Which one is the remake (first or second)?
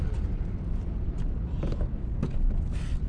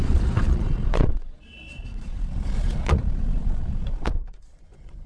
second